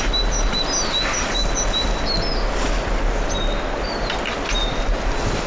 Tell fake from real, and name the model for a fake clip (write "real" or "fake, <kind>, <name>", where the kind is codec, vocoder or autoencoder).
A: real